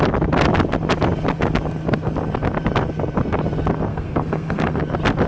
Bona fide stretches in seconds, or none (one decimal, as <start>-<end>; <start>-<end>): 0.0-3.9; 4.8-5.3